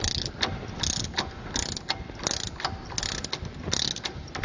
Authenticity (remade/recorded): recorded